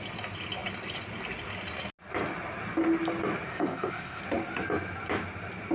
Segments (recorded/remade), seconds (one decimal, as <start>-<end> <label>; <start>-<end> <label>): 0.0-3.5 recorded; 3.5-4.2 remade; 4.2-5.7 recorded